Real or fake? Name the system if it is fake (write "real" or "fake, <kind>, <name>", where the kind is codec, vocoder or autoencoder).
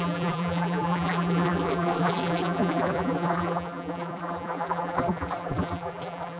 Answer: fake, vocoder, BigVGAN v2